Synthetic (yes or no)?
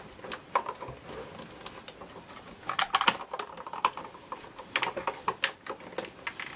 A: no